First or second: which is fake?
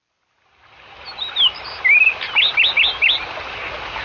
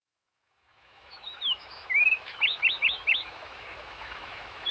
second